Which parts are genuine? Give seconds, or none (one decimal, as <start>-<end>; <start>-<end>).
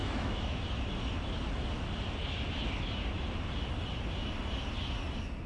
0.6-5.5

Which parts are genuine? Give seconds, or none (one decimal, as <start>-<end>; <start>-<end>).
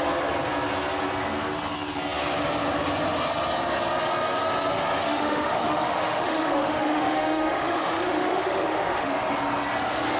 0.0-5.0; 9.1-10.2